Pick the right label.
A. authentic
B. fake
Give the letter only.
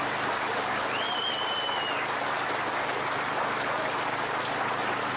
A